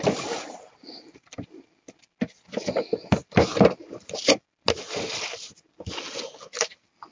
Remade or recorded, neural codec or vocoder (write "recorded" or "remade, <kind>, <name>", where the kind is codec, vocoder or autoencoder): recorded